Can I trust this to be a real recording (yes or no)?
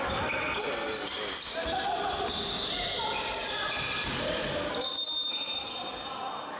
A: yes